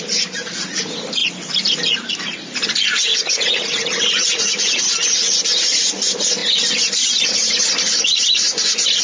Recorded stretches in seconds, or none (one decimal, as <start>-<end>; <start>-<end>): 0.0-3.1; 4.8-9.0